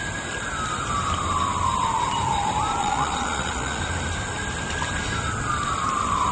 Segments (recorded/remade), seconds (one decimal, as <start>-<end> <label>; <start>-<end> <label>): 0.0-2.8 recorded; 2.8-3.8 remade; 3.8-6.3 recorded